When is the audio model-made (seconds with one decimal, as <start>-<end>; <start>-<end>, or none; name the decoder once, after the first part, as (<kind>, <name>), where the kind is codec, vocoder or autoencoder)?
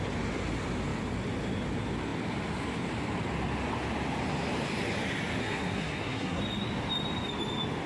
5.4-6.4 (codec, SNAC)